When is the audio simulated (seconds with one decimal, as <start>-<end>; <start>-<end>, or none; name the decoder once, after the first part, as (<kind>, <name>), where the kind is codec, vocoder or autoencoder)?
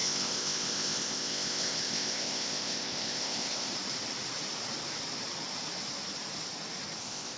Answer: 0.0-3.7 (codec, ZipCodec); 7.0-7.4